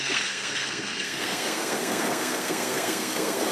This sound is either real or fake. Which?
fake